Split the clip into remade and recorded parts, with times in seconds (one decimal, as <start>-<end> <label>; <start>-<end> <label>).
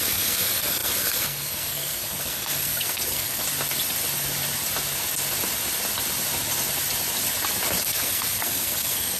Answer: 0.0-3.4 remade; 3.4-7.8 recorded; 7.8-9.2 remade